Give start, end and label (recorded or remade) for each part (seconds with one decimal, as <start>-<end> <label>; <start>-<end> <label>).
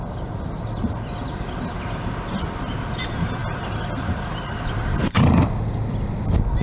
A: 0.0-6.6 recorded